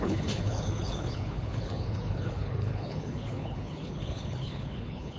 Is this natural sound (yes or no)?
no